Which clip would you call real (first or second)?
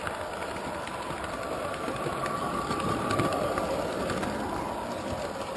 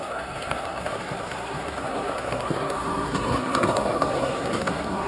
first